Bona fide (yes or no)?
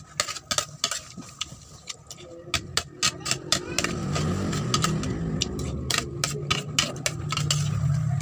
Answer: yes